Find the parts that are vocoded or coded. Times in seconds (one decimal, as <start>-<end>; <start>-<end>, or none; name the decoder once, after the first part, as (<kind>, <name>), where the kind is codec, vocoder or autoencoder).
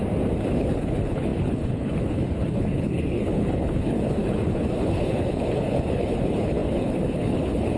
0.5-7.8 (codec, HILCodec)